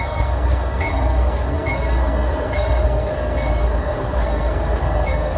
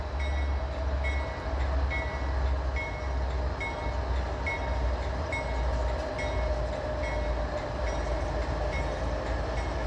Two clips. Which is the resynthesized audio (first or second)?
first